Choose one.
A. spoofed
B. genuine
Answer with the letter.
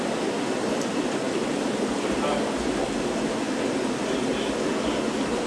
B